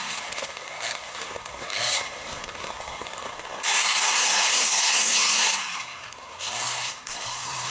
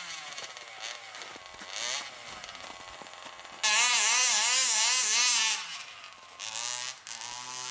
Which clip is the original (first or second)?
second